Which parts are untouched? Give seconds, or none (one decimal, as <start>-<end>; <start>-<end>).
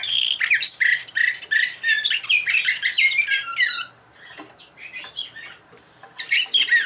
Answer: 0.7-6.9